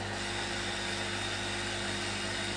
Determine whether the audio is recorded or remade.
recorded